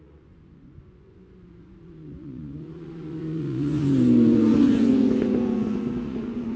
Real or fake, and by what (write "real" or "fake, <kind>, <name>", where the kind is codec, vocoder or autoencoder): fake, vocoder, Vocos